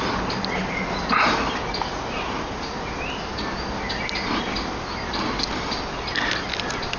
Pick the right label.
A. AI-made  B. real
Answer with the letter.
B